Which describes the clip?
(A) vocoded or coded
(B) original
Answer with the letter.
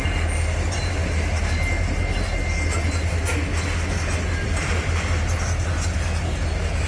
B